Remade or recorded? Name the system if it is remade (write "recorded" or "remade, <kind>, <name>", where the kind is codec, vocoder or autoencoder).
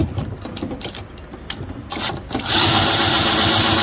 remade, vocoder, BigVGAN v2